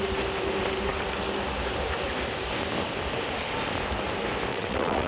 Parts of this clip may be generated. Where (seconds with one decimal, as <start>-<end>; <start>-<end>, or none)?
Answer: 4.5-5.1